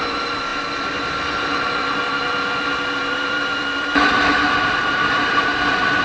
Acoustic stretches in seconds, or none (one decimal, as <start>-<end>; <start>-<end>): 0.0-3.0; 5.2-6.0